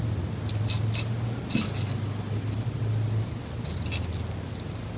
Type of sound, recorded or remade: recorded